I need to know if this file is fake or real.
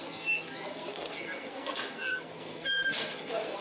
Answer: fake